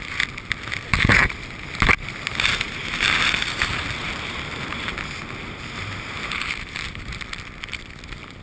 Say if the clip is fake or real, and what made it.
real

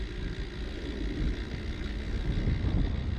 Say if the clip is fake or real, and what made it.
real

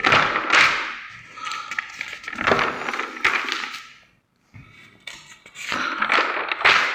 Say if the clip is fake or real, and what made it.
real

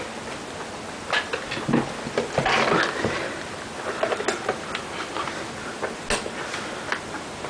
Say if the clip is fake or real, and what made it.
real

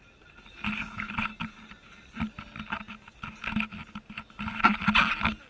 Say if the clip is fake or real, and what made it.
real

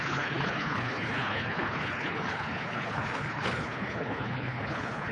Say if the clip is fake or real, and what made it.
fake, codec, HILCodec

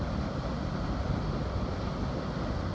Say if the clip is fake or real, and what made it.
real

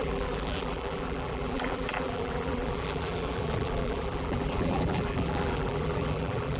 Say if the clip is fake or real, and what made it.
fake, vocoder, BigVGAN v2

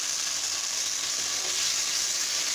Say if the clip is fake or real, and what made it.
real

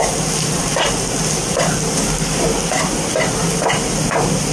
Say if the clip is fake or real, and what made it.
real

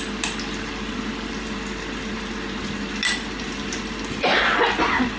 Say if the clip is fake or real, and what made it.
real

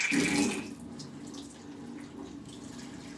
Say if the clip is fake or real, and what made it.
real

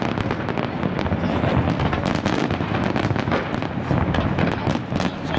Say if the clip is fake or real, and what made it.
real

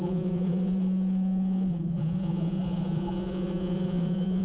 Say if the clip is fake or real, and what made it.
fake, vocoder, Vocos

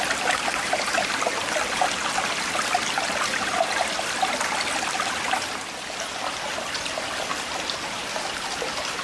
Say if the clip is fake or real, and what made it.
real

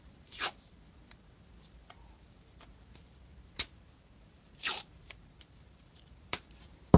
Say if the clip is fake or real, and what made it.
fake, vocoder, BigVGAN v2